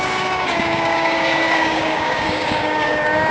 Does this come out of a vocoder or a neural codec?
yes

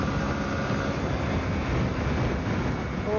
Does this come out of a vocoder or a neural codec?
no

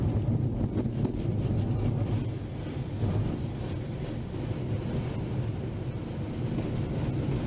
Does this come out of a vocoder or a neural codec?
no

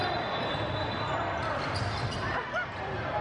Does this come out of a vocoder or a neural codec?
no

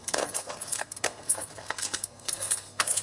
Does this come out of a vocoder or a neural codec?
yes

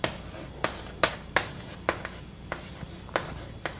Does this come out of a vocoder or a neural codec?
no